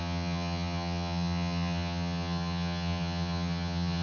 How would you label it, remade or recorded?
remade